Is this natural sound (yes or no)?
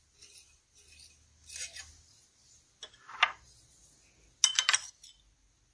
yes